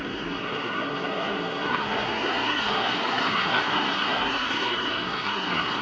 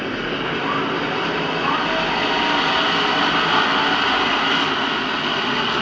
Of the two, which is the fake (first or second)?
first